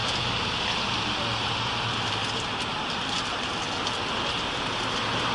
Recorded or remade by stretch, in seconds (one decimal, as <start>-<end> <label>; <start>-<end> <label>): 0.0-5.3 recorded

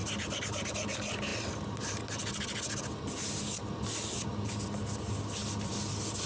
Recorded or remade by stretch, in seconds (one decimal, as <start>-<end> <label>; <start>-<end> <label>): 0.0-6.3 recorded